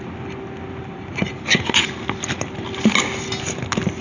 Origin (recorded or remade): recorded